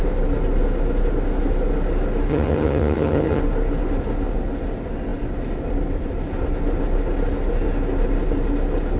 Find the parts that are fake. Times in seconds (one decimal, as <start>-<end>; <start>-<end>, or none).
2.3-3.4